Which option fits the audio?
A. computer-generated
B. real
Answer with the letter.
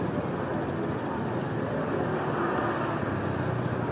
B